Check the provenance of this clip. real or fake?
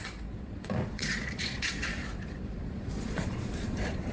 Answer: fake